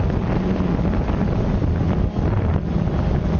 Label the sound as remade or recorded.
recorded